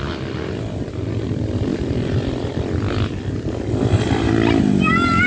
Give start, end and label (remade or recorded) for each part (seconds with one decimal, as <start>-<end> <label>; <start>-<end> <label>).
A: 0.0-5.3 recorded

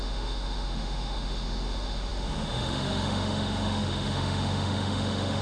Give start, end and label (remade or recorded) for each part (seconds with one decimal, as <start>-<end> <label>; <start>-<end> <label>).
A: 0.0-5.4 remade